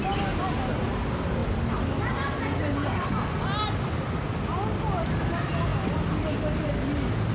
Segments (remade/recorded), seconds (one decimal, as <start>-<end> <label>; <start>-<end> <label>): 0.0-7.3 recorded